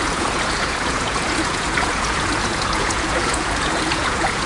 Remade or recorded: remade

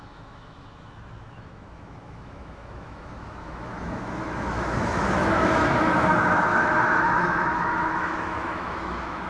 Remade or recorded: remade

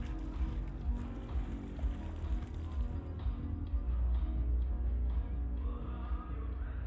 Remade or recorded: recorded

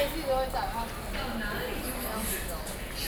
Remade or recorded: recorded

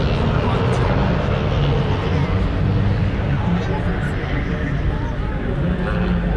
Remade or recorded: recorded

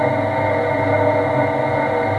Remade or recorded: recorded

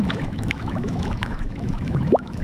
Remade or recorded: remade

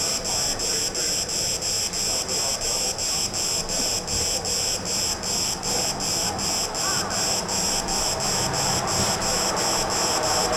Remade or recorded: remade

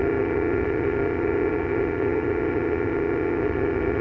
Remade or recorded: remade